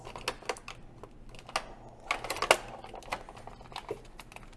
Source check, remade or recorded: recorded